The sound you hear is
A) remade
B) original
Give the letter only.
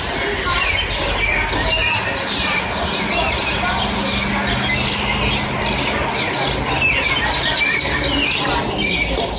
B